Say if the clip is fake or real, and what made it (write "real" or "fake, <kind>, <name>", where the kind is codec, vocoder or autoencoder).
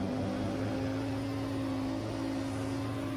real